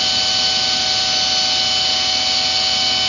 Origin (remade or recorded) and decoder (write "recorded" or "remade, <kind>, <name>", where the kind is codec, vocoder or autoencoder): recorded